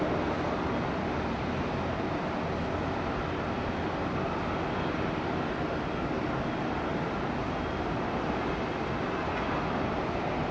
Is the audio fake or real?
real